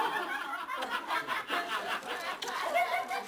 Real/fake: real